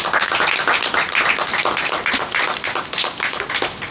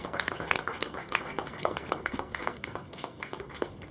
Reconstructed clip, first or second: second